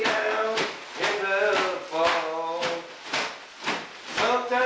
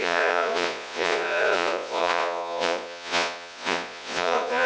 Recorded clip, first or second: first